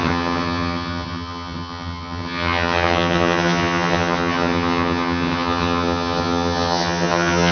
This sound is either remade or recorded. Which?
remade